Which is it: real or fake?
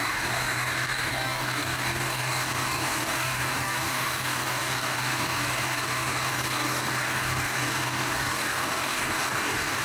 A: fake